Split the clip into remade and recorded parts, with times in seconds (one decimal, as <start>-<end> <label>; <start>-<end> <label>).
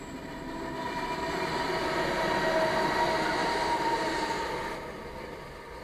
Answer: 0.0-3.4 recorded; 3.4-4.1 remade; 4.1-5.8 recorded